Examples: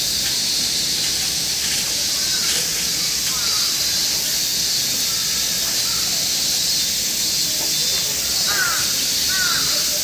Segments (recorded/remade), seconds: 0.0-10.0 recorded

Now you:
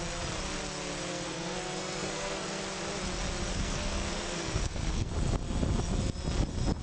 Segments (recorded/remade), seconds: 0.0-1.1 recorded; 1.1-2.6 remade; 2.6-3.5 recorded; 3.5-5.1 remade; 5.1-6.8 recorded